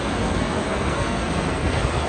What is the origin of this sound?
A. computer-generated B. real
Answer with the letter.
A